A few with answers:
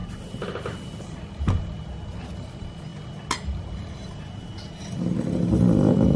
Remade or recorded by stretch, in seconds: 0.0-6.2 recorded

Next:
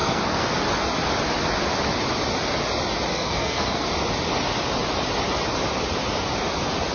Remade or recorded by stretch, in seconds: 0.0-0.6 remade; 0.6-3.1 recorded; 3.1-3.9 remade; 3.9-6.9 recorded

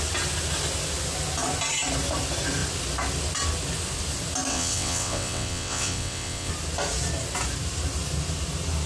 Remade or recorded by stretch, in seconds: 0.0-4.5 recorded; 4.5-6.5 remade; 6.5-8.9 recorded

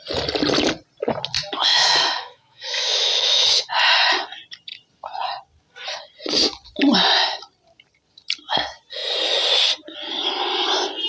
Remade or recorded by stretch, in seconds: 0.0-1.7 recorded; 1.7-3.7 remade; 3.7-11.1 recorded

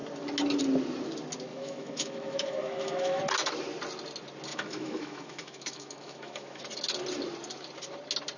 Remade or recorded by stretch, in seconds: 0.0-1.5 recorded; 1.5-3.2 remade; 3.2-4.5 recorded; 4.5-6.6 remade; 6.6-8.4 recorded

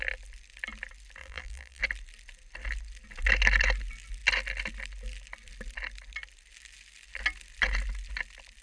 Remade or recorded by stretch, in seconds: 0.0-1.2 recorded; 1.2-1.8 remade; 1.8-8.6 recorded

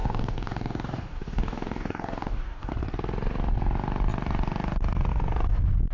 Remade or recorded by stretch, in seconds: 0.0-2.7 remade; 2.7-5.9 recorded